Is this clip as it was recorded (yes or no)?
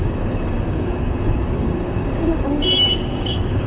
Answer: no